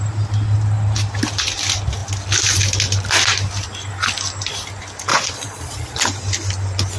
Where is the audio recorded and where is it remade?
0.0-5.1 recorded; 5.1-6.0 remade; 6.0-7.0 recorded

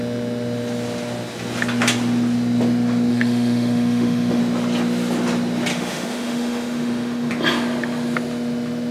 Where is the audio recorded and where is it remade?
0.0-3.1 recorded; 3.1-4.4 remade; 4.4-5.7 recorded; 5.7-7.3 remade; 7.3-8.9 recorded

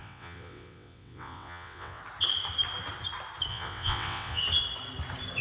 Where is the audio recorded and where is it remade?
0.0-2.0 remade; 2.0-3.5 recorded; 3.5-4.4 remade; 4.4-5.4 recorded

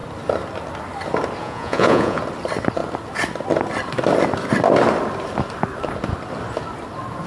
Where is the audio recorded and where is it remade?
0.0-1.4 recorded; 1.4-2.2 remade; 2.2-7.3 recorded

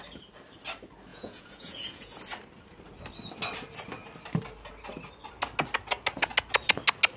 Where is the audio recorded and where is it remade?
0.0-1.1 recorded; 1.1-2.2 remade; 2.2-7.2 recorded

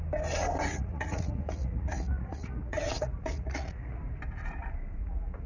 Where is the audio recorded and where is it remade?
0.0-0.7 recorded; 0.7-4.0 remade; 4.0-5.0 recorded; 5.0-5.5 remade

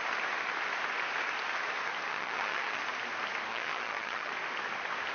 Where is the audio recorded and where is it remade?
0.0-2.1 recorded; 2.1-2.8 remade; 2.8-3.5 recorded; 3.5-4.3 remade; 4.3-5.1 recorded

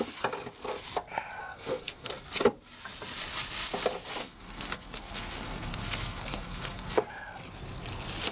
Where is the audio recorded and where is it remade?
0.0-1.4 recorded; 1.4-2.1 remade; 2.1-4.2 recorded; 4.2-7.1 remade; 7.1-8.3 recorded